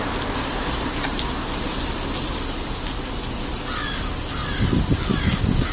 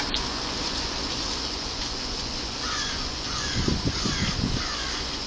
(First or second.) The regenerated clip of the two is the second